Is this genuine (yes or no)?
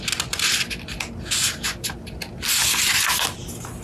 yes